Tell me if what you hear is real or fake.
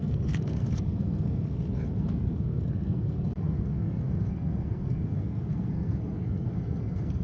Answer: fake